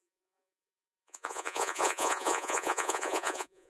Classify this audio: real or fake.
fake